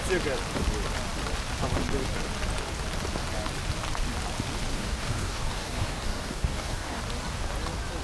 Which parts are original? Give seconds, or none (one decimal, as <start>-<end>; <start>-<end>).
0.0-4.7; 7.0-8.0